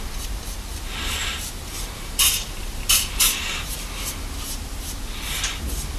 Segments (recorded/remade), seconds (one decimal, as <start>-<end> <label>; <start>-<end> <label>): 0.0-1.2 recorded; 1.2-4.8 remade; 4.8-6.0 recorded